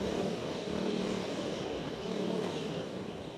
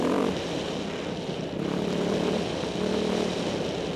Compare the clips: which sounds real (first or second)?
second